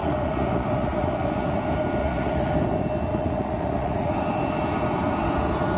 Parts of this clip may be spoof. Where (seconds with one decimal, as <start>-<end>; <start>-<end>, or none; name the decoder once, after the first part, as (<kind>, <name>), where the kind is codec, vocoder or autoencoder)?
0.0-1.6 (vocoder, Vocos); 2.0-2.5; 3.1-4.1